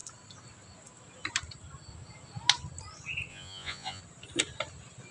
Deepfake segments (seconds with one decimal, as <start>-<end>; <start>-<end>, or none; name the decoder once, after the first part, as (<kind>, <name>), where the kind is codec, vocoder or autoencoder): 3.3-4.0 (vocoder, Vocos)

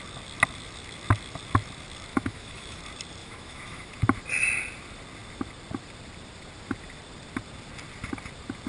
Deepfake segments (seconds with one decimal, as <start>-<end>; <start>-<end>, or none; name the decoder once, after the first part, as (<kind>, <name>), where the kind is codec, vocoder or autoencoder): 2.1-2.8 (autoencoder, DAC-VAE); 3.2-3.9

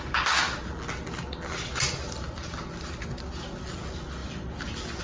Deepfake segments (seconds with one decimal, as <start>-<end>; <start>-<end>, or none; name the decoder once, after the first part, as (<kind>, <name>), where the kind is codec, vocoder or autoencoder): none

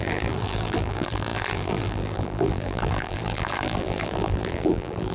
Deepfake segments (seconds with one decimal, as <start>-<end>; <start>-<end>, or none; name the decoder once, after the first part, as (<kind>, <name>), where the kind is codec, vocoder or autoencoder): 0.0-5.1 (vocoder, BigVGAN v2)

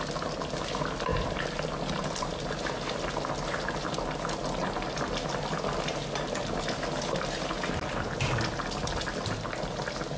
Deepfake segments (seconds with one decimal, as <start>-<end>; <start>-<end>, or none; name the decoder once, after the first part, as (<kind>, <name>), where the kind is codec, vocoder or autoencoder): none

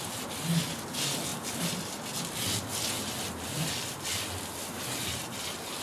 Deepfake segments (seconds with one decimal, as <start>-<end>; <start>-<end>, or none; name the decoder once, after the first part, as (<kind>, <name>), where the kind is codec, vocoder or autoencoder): none